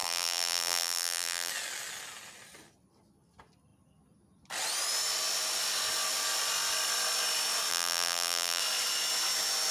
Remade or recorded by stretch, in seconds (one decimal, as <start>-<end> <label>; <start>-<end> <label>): 0.0-1.5 remade; 1.5-7.7 recorded; 7.7-8.6 remade; 8.6-9.7 recorded